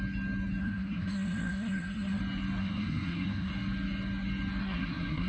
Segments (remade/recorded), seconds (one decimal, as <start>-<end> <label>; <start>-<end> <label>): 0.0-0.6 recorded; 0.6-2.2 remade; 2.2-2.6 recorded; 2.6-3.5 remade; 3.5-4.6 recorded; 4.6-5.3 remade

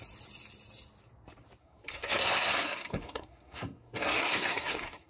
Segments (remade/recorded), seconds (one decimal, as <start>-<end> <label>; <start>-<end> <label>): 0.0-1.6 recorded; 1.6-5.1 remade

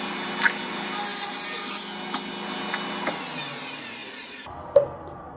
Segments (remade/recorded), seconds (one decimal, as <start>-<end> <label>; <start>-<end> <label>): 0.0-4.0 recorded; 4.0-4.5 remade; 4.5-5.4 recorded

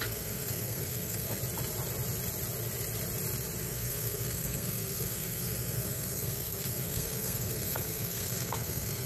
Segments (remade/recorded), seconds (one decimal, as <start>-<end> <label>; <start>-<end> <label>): 0.0-1.4 remade; 1.4-3.6 recorded; 3.6-9.1 remade